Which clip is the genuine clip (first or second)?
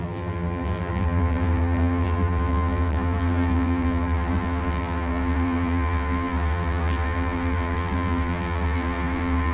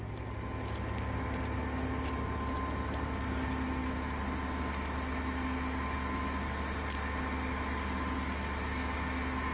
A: second